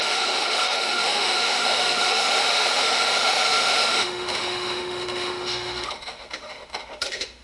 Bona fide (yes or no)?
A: no